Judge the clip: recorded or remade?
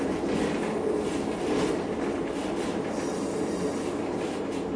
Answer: recorded